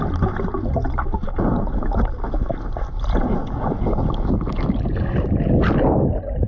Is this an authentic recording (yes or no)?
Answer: yes